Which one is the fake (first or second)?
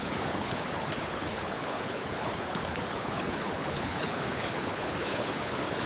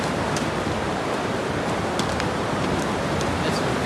first